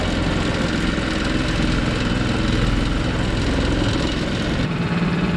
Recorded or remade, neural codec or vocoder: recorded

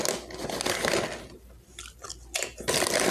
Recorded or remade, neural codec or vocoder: recorded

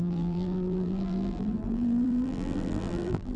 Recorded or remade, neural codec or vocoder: remade, vocoder, BigVGAN v2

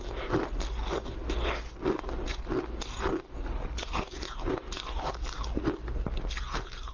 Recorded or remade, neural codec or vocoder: recorded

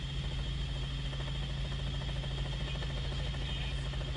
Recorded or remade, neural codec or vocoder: recorded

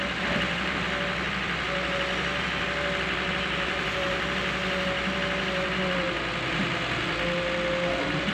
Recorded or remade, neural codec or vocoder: recorded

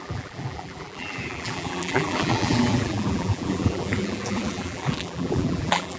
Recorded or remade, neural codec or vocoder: remade, vocoder, BigVGAN v2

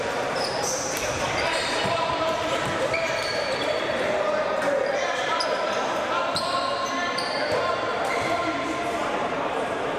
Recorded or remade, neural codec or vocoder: remade, vocoder, BigVGAN v2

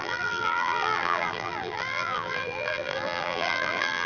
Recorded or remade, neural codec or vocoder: remade, vocoder, BigVGAN v2